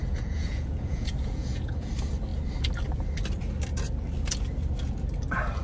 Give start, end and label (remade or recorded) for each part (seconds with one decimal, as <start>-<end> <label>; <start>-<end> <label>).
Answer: 0.0-1.9 remade; 1.9-5.6 recorded